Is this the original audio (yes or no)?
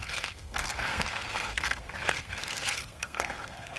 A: no